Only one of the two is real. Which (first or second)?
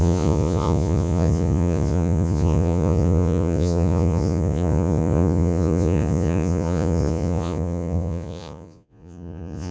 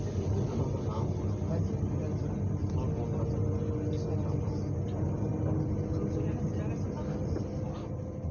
second